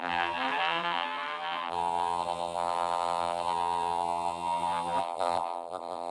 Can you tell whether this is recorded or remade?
remade